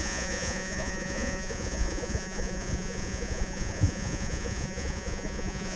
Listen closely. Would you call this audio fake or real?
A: fake